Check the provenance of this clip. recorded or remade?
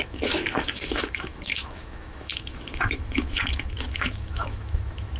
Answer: remade